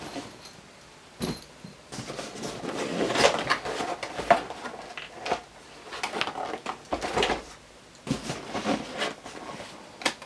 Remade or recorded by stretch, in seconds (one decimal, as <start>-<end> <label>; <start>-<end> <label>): 0.0-10.3 recorded